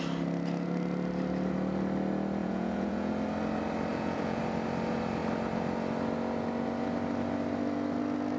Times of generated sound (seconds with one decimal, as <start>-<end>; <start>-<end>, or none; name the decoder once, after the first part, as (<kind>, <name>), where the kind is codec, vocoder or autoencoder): 2.4-3.1 (vocoder, Vocos); 3.9-4.4